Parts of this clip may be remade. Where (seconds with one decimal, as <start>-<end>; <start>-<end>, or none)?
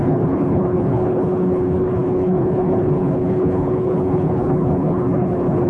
0.0-5.7